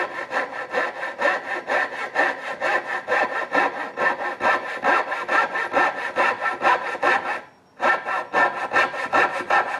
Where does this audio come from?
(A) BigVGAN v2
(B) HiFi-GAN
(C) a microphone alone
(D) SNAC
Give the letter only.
C